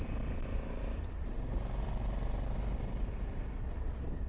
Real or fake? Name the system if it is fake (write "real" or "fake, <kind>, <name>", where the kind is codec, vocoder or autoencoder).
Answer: real